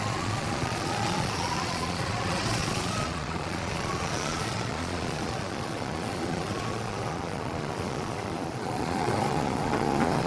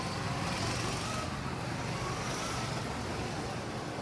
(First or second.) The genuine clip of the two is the second